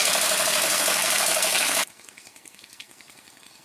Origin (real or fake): fake